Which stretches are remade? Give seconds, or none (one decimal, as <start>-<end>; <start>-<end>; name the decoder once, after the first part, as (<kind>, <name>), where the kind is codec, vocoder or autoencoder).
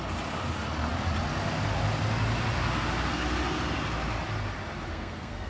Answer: 4.9-5.5 (codec, SNAC)